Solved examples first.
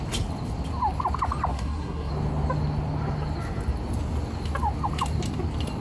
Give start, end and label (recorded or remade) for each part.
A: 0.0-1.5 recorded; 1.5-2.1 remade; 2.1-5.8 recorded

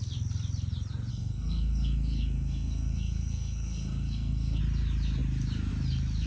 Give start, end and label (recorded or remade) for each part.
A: 0.0-1.1 recorded; 1.1-4.6 remade; 4.6-6.3 recorded

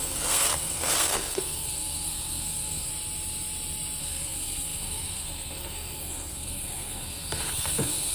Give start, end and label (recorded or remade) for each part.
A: 0.0-2.9 remade; 2.9-4.0 recorded; 4.0-8.1 remade